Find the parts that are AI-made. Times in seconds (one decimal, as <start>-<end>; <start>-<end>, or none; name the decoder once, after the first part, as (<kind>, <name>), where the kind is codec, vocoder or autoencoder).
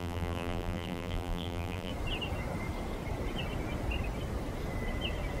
0.0-1.9 (vocoder, BigVGAN v2)